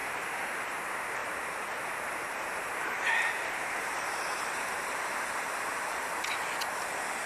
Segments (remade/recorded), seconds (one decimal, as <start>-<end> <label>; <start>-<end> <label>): 0.0-1.2 recorded; 1.2-5.3 remade; 5.3-7.3 recorded